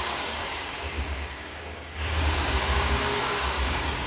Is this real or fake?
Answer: fake